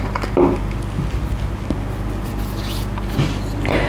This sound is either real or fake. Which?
real